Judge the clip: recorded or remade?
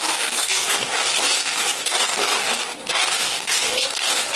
remade